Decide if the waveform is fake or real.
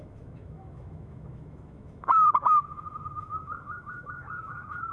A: fake